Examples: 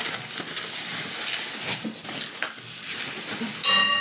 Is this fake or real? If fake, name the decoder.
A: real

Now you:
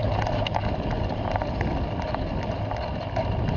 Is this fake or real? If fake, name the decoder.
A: real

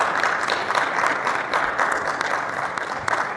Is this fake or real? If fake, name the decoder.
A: real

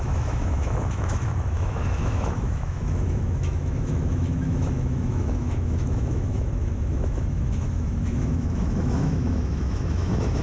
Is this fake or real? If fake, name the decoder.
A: fake, autoencoder, DAC-VAE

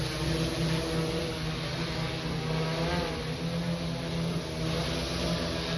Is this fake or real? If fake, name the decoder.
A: real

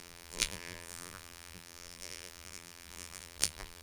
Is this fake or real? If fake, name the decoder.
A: fake, vocoder, BigVGAN v2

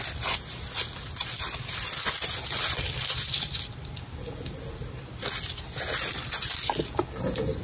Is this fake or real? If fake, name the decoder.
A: real